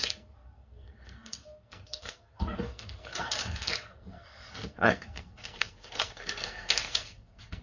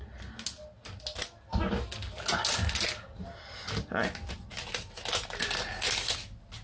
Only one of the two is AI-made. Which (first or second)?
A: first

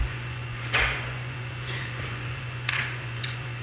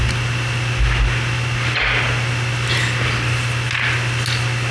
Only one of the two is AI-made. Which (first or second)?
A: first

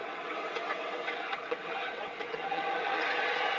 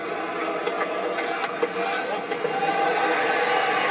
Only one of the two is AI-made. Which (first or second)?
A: first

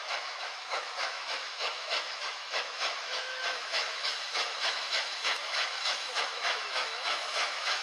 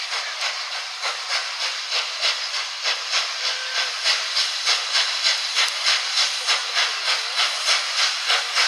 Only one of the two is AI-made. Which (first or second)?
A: first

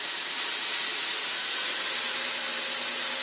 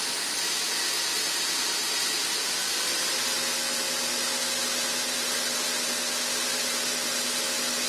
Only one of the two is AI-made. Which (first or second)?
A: first